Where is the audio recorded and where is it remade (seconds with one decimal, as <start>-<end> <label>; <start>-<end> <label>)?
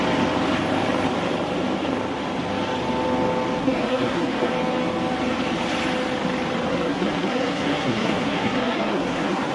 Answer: 0.0-3.6 recorded; 3.6-4.5 remade; 4.5-6.7 recorded; 6.7-9.5 remade